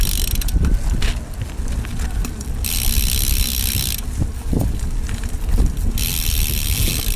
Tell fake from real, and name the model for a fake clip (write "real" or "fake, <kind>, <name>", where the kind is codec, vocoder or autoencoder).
real